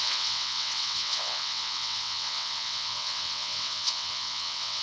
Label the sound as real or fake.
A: fake